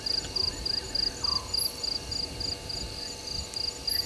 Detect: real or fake real